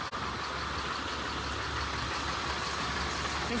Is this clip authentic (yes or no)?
yes